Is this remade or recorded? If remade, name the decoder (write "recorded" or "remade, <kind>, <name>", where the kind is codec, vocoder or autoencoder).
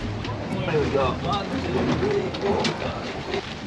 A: recorded